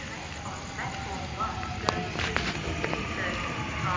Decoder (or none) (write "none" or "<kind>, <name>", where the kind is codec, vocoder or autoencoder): none